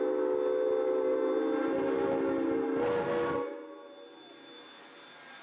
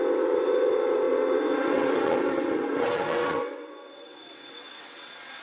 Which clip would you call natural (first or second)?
first